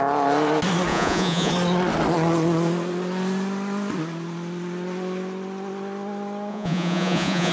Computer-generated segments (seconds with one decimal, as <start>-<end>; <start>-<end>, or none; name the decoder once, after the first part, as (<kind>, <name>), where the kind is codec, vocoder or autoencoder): 0.9-1.5 (vocoder, Vocos); 6.5-7.5